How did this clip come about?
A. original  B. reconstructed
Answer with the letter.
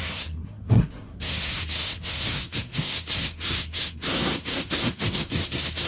B